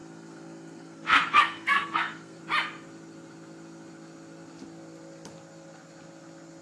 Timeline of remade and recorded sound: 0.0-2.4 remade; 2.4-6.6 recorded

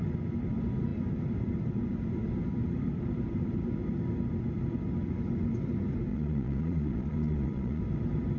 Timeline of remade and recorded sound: 0.0-6.1 recorded; 6.1-7.8 remade; 7.8-8.4 recorded

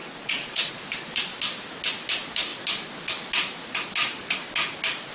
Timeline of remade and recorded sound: 0.0-0.7 remade; 0.7-5.1 recorded

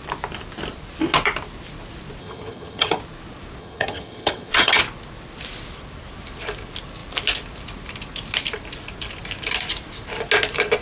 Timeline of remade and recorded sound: 0.0-2.2 recorded; 2.2-3.0 remade; 3.0-3.6 recorded; 3.6-4.8 remade; 4.8-10.8 recorded

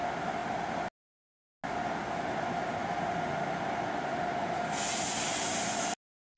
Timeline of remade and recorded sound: 0.0-6.4 recorded

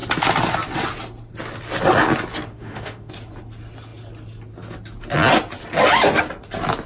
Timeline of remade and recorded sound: 0.0-2.5 recorded; 2.5-3.1 remade; 3.1-6.9 recorded